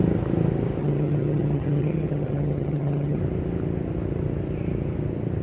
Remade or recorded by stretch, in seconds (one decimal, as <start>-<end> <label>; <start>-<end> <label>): 0.0-0.8 recorded; 0.8-3.2 remade; 3.2-5.4 recorded

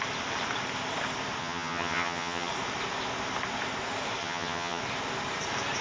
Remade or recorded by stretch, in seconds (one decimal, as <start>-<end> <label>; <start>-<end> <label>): 0.0-1.4 recorded; 1.4-2.5 remade; 2.5-4.2 recorded; 4.2-4.8 remade; 4.8-5.8 recorded

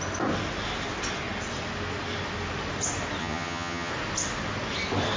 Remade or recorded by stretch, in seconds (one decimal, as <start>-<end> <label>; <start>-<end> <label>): 0.0-3.2 recorded; 3.2-3.9 remade; 3.9-5.2 recorded

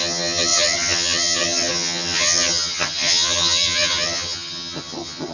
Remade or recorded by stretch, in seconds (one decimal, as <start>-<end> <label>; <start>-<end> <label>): 0.0-5.3 remade

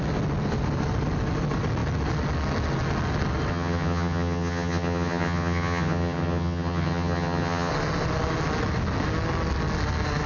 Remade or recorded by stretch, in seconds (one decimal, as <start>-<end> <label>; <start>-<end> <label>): 0.0-3.5 recorded; 3.5-7.7 remade; 7.7-10.3 recorded

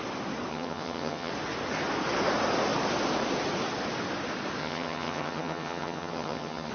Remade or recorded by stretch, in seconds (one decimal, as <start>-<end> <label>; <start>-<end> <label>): 0.0-0.5 recorded; 0.5-1.3 remade; 1.3-4.6 recorded; 4.6-6.7 remade

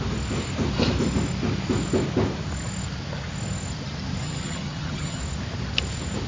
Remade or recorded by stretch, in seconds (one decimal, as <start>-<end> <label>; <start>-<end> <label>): 0.0-4.2 recorded; 4.2-5.2 remade; 5.2-6.3 recorded

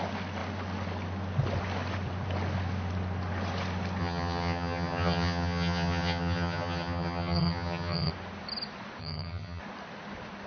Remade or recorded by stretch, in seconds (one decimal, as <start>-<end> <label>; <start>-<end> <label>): 0.0-4.0 recorded; 4.0-8.1 remade; 8.1-9.0 recorded; 9.0-9.6 remade; 9.6-10.5 recorded